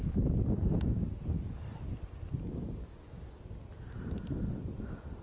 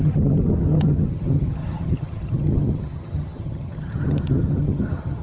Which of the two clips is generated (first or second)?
second